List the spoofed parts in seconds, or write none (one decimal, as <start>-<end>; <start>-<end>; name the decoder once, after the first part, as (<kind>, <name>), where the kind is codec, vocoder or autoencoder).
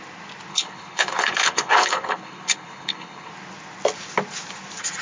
0.5-3.3 (codec, HILCodec)